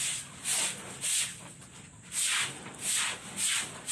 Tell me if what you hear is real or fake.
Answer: real